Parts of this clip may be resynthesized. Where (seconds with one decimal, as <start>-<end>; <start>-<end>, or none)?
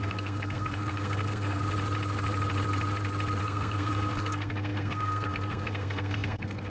0.0-1.6; 3.4-6.7